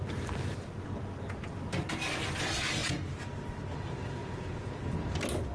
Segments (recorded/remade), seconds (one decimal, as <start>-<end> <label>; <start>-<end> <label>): 0.0-4.2 recorded; 4.2-4.8 remade; 4.8-5.5 recorded